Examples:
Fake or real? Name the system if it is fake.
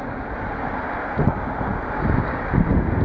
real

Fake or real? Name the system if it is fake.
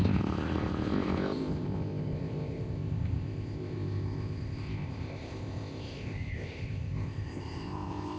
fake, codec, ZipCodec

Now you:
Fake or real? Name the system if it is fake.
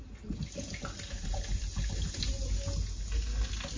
real